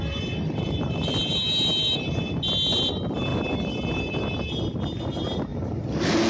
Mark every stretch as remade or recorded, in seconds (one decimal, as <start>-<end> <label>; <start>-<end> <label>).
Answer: 0.0-6.3 recorded